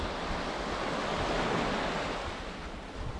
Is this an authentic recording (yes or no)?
yes